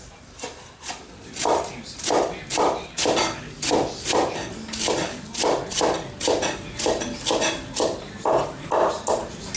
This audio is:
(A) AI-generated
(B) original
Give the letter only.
B